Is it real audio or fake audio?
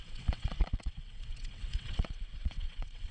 fake